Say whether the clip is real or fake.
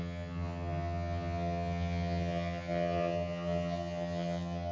fake